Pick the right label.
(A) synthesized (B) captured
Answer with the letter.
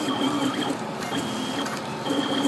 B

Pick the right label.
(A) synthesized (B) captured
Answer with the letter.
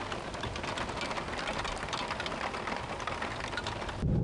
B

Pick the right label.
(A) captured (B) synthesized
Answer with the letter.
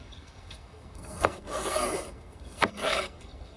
B